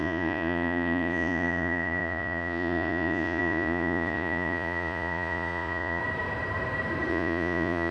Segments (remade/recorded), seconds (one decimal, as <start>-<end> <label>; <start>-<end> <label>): 0.0-6.0 remade; 6.0-7.1 recorded; 7.1-7.9 remade